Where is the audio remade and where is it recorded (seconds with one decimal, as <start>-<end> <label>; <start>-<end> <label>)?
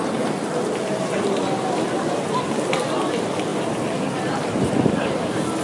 0.0-5.6 recorded